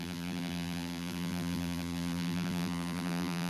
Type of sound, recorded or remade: remade